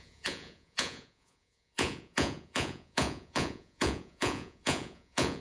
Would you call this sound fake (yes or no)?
yes